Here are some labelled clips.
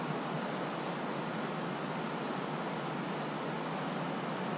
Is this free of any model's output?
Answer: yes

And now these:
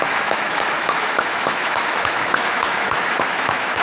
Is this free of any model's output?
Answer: no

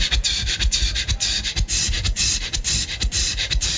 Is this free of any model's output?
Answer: yes